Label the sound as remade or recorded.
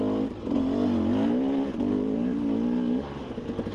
recorded